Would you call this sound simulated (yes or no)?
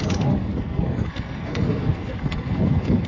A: yes